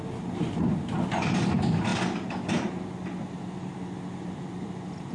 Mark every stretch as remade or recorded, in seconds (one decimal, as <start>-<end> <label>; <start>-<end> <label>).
0.0-5.1 recorded